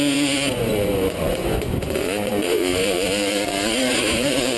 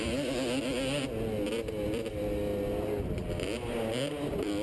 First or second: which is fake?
first